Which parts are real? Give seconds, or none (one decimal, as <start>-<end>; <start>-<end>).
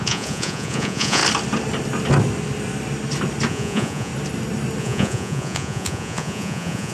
1.2-3.5; 4.1-4.8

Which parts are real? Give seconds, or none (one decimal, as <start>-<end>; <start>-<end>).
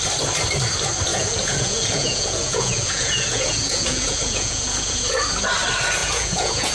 0.0-1.1; 5.1-6.0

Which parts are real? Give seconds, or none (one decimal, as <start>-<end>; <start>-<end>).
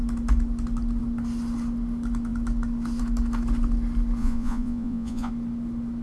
0.0-4.2; 5.3-6.0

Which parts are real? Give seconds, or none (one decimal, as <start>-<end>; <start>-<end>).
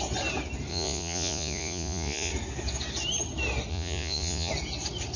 0.0-0.7; 2.3-3.7; 4.5-5.2